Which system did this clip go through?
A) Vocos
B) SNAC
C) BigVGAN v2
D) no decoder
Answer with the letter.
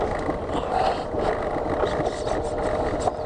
D